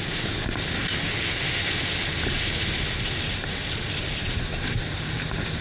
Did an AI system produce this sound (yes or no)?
no